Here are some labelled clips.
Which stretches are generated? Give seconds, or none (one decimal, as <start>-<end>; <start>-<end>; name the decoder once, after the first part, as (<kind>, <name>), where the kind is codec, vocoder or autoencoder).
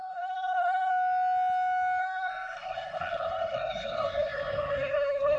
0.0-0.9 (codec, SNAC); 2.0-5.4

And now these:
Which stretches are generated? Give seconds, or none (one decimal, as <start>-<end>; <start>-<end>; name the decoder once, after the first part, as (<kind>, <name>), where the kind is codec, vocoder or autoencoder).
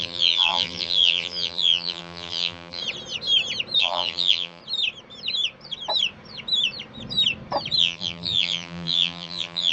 0.0-2.8 (vocoder, BigVGAN v2); 3.8-4.6; 7.8-9.7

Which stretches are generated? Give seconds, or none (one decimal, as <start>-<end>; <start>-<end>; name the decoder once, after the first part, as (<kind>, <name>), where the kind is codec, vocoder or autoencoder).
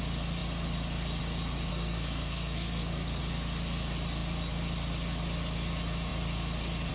1.7-3.2 (codec, SNAC)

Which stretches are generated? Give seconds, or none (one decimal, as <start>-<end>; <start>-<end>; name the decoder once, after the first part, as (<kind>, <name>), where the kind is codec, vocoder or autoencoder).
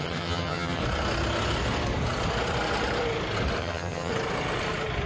0.0-0.8 (vocoder, HiFi-GAN); 3.6-4.1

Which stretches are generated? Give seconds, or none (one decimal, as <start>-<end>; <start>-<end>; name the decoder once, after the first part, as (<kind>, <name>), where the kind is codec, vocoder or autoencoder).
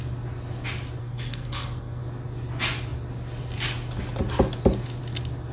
1.0-2.0 (codec, SNAC)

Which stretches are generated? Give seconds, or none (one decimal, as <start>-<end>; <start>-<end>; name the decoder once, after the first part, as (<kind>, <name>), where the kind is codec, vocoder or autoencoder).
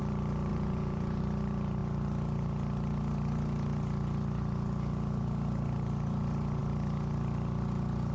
0.5-1.2 (vocoder, Vocos)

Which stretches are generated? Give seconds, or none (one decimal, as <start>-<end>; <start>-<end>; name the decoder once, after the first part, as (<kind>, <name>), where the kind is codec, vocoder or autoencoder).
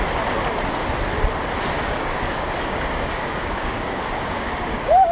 1.8-5.1 (codec, DAC)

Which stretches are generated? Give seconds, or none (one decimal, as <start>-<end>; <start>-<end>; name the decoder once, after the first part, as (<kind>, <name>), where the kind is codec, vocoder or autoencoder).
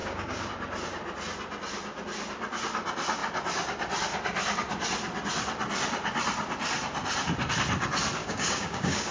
0.0-0.5 (codec, DAC); 8.2-9.1